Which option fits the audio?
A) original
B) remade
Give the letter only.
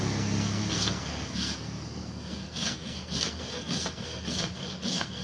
B